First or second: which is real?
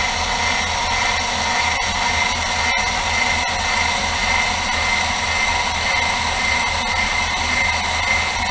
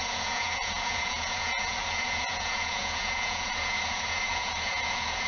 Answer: first